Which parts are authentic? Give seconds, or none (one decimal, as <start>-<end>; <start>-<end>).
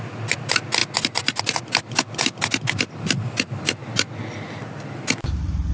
0.0-5.7